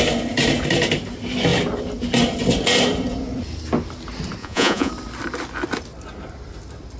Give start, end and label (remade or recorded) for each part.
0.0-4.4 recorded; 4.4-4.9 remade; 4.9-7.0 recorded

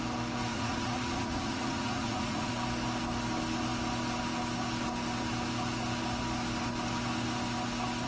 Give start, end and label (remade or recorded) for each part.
0.0-0.5 recorded; 0.5-2.5 remade; 2.5-8.1 recorded

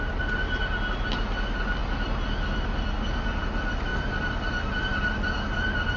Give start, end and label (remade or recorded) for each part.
0.0-6.0 recorded

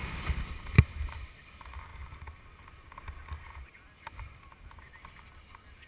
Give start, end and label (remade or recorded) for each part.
0.0-5.9 recorded

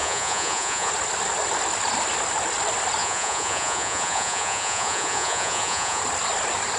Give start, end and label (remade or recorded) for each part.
0.0-0.9 remade; 0.9-3.0 recorded; 3.0-6.0 remade; 6.0-6.8 recorded